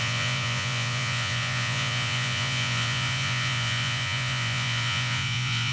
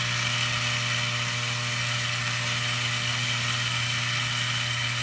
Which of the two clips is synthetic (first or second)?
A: first